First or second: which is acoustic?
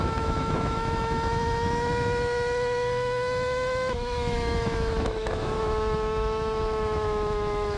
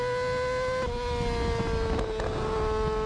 second